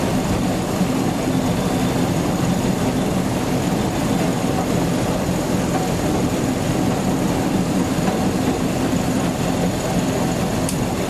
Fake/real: fake